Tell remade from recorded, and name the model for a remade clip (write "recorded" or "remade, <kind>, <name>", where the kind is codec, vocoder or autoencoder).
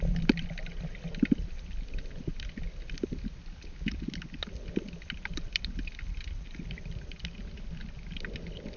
recorded